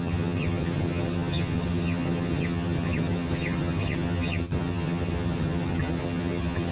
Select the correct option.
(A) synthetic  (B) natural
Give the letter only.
A